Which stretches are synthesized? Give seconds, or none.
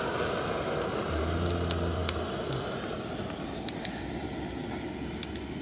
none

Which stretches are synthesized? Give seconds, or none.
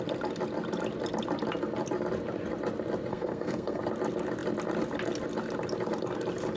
3.1-3.8 (codec, SNAC)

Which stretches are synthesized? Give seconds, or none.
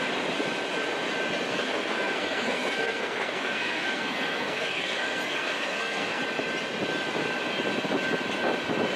1.5-6.2 (codec, SNAC)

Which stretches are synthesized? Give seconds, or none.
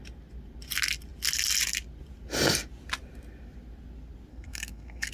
4.3-5.1 (codec, SNAC)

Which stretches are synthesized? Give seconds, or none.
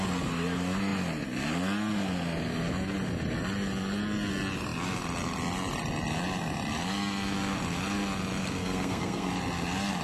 8.4-9.3 (codec, SNAC)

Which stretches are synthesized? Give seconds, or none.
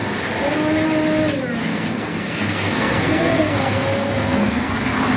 1.6-4.7 (codec, SNAC)